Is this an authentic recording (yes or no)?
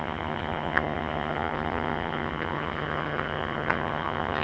no